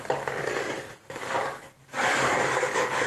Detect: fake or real fake